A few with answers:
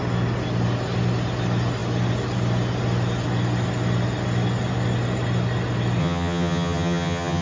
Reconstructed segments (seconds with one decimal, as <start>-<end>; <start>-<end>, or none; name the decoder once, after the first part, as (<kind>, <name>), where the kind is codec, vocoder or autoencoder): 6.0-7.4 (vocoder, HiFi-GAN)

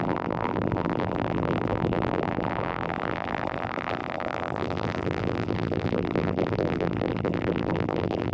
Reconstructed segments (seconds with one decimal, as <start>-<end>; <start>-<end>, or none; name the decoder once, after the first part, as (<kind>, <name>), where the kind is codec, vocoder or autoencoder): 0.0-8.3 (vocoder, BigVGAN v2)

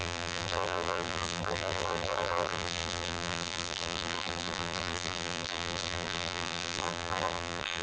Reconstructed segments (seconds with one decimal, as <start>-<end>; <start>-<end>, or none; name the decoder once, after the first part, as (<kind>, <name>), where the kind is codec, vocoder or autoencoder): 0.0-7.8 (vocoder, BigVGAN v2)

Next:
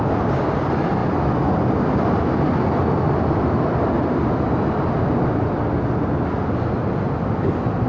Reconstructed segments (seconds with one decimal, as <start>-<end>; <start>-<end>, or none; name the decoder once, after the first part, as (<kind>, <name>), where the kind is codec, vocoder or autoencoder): none

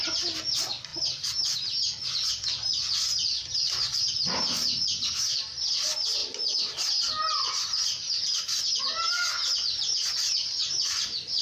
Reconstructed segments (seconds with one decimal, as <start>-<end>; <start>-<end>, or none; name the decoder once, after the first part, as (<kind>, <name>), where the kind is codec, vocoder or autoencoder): none

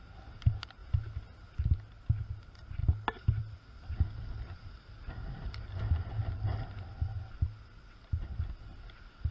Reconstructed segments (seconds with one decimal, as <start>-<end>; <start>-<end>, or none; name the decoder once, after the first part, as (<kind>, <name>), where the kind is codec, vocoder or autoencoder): none